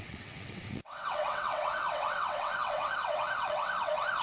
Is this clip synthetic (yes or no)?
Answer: yes